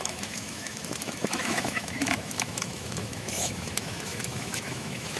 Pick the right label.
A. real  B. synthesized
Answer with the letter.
B